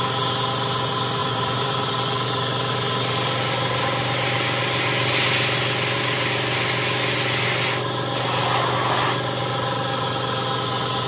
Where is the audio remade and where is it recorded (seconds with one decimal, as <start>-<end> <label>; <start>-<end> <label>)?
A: 0.0-1.2 recorded; 1.2-1.9 remade; 1.9-11.1 recorded